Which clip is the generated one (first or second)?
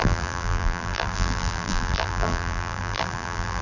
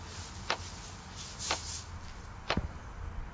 first